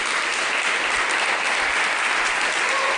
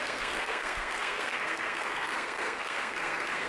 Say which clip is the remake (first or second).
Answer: second